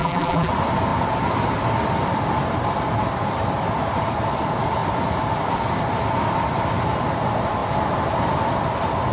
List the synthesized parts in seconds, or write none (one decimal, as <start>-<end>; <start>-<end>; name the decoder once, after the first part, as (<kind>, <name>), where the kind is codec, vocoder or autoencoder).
0.0-0.5 (vocoder, BigVGAN v2)